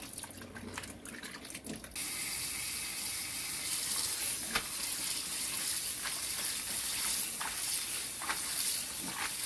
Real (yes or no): yes